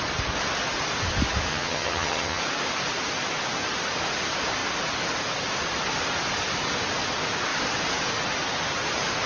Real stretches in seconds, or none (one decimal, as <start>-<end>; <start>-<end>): 0.0-1.5; 2.4-9.3